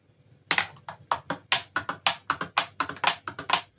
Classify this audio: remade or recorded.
recorded